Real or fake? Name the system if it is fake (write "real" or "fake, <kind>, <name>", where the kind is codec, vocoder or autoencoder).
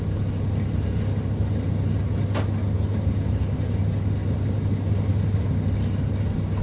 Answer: real